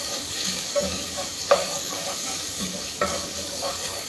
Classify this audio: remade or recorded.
remade